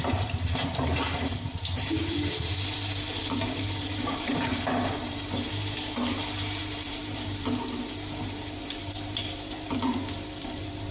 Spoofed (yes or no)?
yes